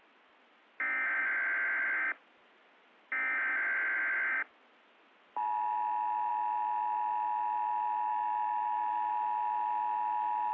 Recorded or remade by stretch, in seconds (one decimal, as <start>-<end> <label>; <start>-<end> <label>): 0.0-8.1 recorded; 8.1-9.1 remade; 9.1-10.5 recorded